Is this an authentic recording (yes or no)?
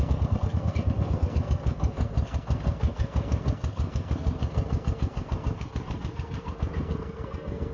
no